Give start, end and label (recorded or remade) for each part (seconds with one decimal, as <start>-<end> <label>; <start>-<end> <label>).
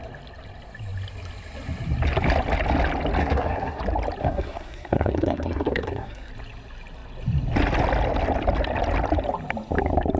0.0-3.2 recorded; 3.2-3.8 remade; 3.8-4.2 recorded; 4.2-6.3 remade; 6.3-10.2 recorded